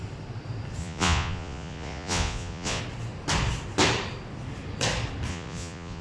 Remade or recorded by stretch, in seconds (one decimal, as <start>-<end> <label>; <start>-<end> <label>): 0.0-0.8 recorded; 0.8-2.8 remade; 2.8-5.3 recorded; 5.3-6.0 remade